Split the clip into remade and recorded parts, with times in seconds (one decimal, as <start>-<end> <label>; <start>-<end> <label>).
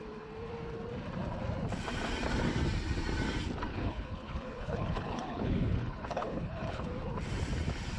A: 0.0-3.7 recorded; 3.7-6.9 remade; 6.9-8.0 recorded